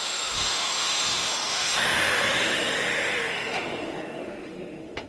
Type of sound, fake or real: fake